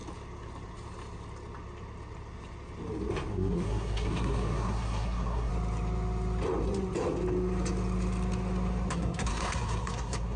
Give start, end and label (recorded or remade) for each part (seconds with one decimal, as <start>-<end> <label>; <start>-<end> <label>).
0.0-3.3 recorded; 3.3-5.5 remade; 5.5-8.9 recorded; 8.9-10.4 remade